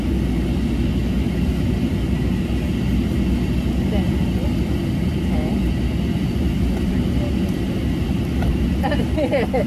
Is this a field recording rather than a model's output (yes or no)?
yes